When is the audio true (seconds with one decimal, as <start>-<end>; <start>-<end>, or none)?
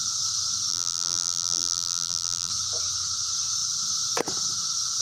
0.0-0.7; 2.5-5.0